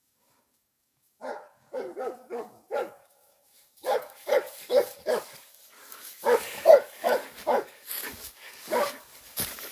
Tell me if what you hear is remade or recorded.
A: remade